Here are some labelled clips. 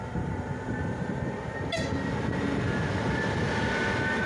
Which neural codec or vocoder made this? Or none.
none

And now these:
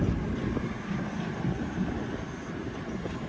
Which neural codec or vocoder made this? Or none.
none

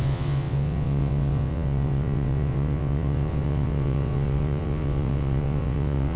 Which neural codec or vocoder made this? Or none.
vocoder, WaveNeXt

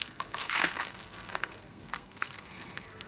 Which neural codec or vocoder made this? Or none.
codec, SNAC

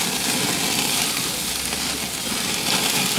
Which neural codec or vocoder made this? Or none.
none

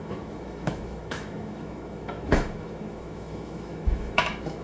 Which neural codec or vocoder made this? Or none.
autoencoder, DAC-VAE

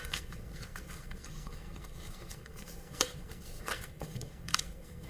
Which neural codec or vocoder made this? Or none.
codec, SNAC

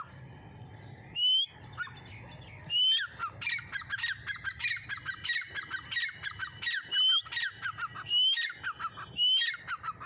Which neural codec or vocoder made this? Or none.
none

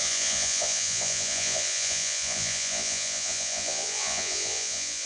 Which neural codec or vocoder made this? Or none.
vocoder, Vocos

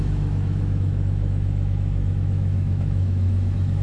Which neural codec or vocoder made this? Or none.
autoencoder, DAC-VAE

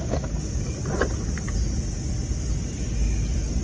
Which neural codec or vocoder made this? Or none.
none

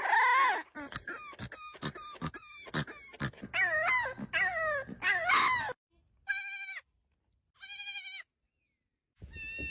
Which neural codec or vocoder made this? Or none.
none